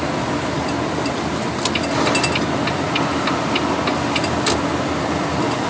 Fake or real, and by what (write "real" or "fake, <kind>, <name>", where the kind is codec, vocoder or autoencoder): real